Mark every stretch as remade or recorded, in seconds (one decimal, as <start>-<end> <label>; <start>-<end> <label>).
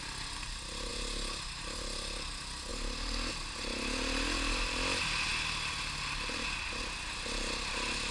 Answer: 0.0-8.1 recorded